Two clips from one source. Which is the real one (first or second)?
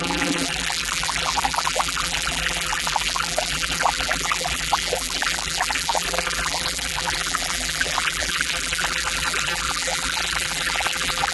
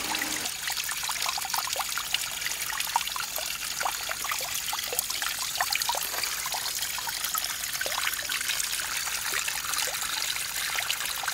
second